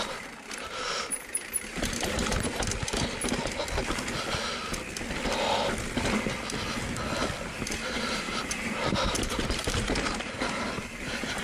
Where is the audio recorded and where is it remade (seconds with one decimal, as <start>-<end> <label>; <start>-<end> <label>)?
0.0-2.5 remade; 2.5-7.5 recorded; 7.5-11.4 remade